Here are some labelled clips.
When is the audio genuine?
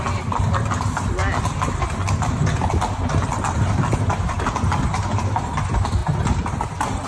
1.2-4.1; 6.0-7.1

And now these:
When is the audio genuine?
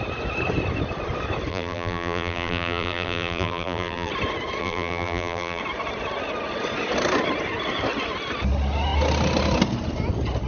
0.0-1.5; 4.1-4.6; 5.6-10.5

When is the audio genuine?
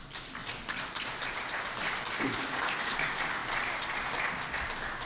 0.0-5.1